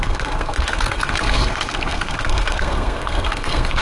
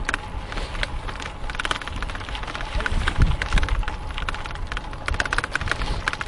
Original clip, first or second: second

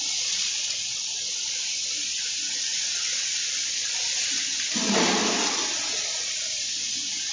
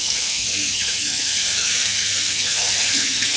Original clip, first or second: first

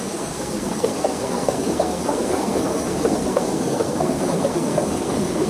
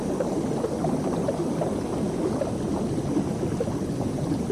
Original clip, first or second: second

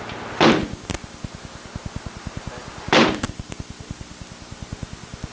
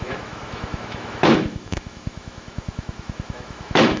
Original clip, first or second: first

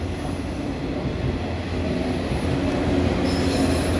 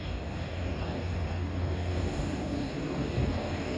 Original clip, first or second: first